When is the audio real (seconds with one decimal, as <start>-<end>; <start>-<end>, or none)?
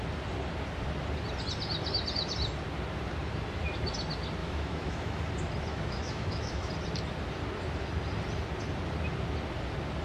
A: 0.0-4.4; 5.2-5.7; 6.7-10.0